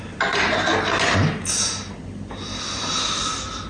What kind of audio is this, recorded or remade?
recorded